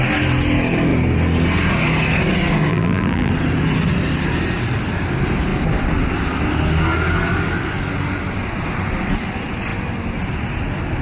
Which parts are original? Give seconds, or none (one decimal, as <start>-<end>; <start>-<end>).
0.0-2.7; 3.3-11.0